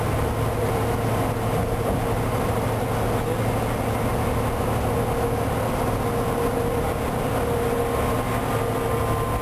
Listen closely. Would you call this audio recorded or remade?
recorded